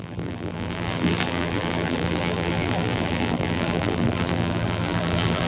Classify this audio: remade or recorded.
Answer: remade